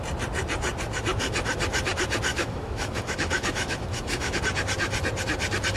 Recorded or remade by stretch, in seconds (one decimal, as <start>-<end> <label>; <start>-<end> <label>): 0.0-2.3 recorded; 2.3-4.4 remade; 4.4-5.8 recorded